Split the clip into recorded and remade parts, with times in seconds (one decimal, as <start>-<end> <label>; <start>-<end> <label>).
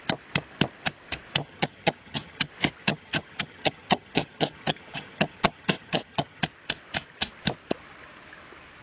0.0-1.4 recorded; 1.4-2.5 remade; 2.5-2.9 recorded; 2.9-6.4 remade; 6.4-8.8 recorded